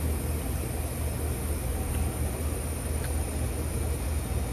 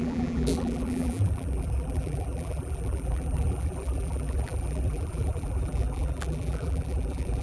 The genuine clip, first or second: first